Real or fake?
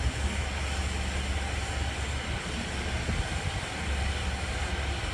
real